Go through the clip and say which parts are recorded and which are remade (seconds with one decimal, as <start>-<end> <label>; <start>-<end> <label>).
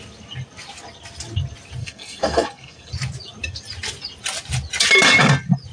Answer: 0.0-1.8 recorded; 1.8-2.9 remade; 2.9-5.7 recorded